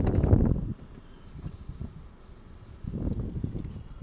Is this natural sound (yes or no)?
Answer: yes